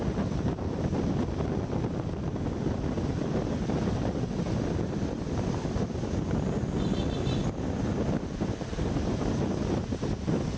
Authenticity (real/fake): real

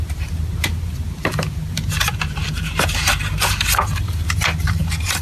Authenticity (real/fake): fake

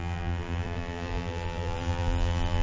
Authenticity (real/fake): fake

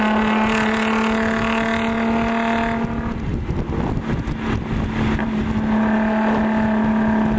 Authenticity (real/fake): real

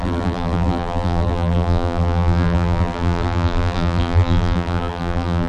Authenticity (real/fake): fake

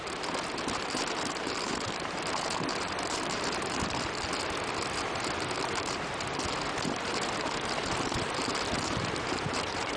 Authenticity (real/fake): fake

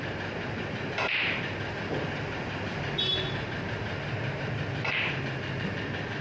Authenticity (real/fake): real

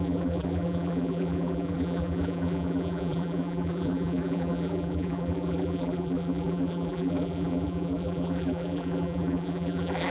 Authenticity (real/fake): fake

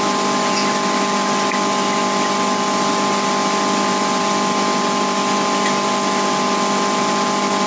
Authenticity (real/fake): real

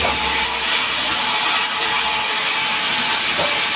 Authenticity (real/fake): real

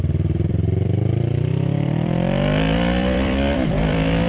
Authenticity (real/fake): fake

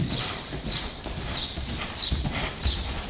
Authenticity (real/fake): fake